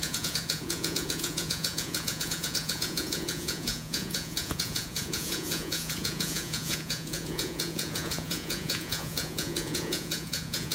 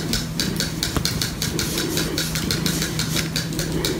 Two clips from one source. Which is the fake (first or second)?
first